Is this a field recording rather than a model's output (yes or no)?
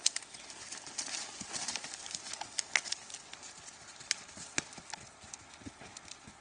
yes